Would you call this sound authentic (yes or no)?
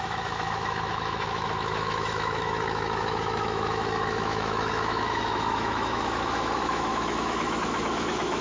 no